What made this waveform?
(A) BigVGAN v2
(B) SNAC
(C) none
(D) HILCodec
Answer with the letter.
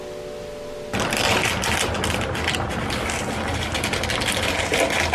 C